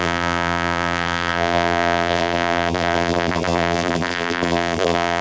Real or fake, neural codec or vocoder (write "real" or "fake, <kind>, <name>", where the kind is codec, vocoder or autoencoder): fake, vocoder, BigVGAN v2